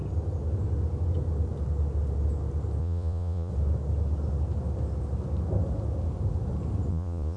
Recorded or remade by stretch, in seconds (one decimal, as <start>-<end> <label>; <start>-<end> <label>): 0.0-2.8 recorded; 2.8-3.5 remade; 3.5-6.9 recorded; 6.9-7.4 remade